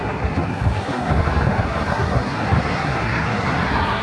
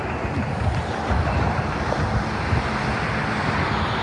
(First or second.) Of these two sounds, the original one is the second